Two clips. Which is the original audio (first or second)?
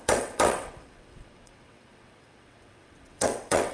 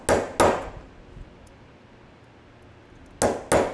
second